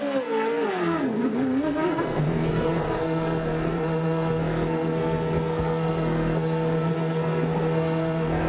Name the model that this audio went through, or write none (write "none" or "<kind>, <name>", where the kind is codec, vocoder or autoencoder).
codec, SNAC